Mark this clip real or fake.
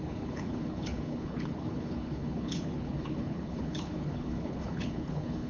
fake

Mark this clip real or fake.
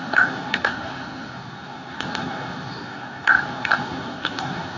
fake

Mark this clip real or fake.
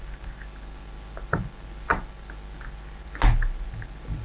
real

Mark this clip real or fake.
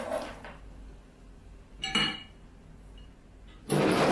real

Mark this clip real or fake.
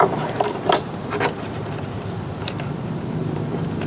fake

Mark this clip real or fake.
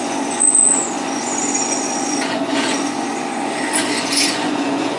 fake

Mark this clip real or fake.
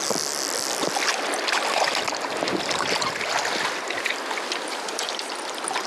real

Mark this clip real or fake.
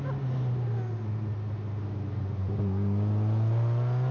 real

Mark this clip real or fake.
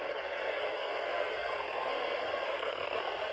fake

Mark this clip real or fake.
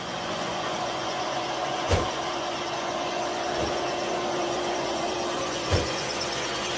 fake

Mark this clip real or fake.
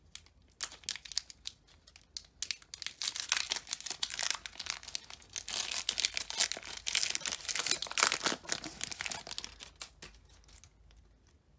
real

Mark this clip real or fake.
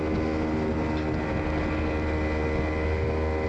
real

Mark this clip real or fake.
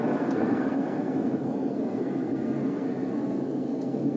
fake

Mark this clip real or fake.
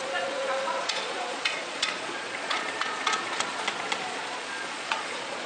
fake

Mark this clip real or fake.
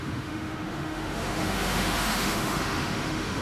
fake